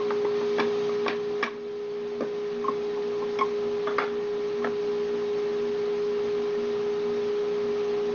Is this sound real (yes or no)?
yes